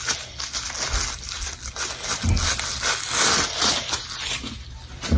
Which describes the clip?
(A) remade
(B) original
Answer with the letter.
B